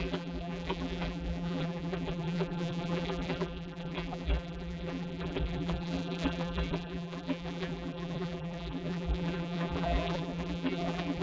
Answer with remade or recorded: remade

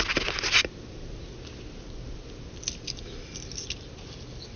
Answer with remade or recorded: recorded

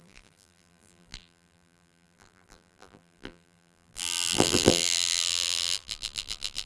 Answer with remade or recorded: remade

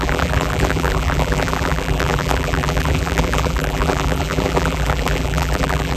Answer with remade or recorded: remade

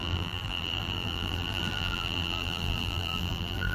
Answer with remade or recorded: remade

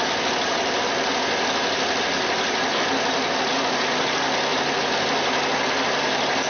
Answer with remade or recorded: recorded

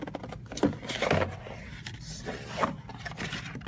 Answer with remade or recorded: recorded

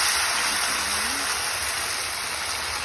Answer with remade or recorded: recorded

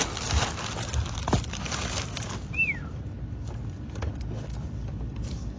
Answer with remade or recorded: recorded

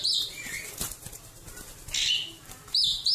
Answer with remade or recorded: recorded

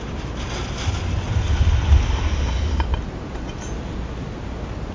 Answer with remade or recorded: recorded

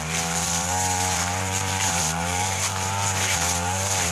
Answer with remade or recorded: remade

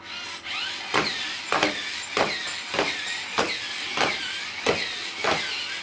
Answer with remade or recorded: recorded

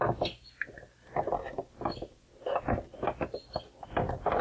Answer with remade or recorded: recorded